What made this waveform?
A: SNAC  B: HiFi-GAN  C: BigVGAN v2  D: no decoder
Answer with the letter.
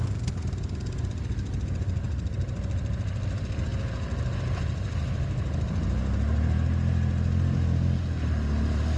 D